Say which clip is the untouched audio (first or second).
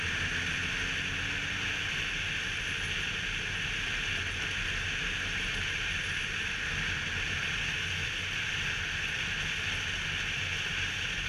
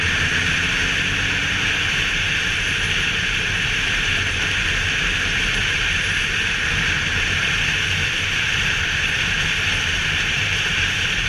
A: first